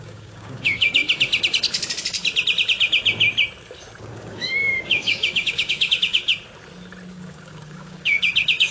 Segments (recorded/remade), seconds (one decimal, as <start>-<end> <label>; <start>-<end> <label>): 0.0-1.0 remade; 1.0-4.0 recorded; 4.0-6.3 remade; 6.3-7.1 recorded; 7.1-8.7 remade